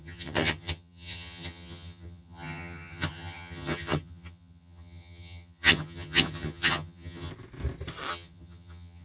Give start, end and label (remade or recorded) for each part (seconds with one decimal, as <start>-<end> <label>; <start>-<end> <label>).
0.0-7.3 remade; 7.3-8.1 recorded; 8.1-9.0 remade